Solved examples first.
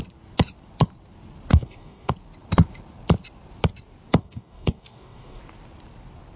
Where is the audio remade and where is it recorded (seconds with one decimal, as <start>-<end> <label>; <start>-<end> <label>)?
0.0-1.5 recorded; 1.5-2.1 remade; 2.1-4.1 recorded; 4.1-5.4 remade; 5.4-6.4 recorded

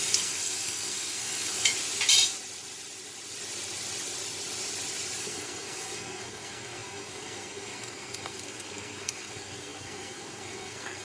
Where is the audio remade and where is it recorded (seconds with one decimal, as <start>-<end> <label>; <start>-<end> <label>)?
0.0-1.7 remade; 1.7-5.2 recorded; 5.2-11.0 remade

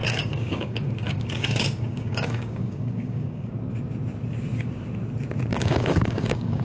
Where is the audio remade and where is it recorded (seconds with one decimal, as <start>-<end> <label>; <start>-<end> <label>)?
0.0-3.5 remade; 3.5-5.5 recorded; 5.5-6.6 remade

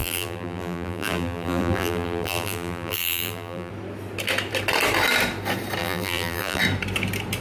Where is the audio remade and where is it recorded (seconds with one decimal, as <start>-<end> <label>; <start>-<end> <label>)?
0.0-3.7 remade; 3.7-5.8 recorded; 5.8-6.6 remade; 6.6-7.4 recorded